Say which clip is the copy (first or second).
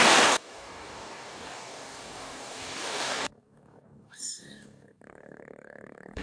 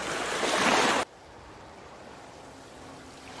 first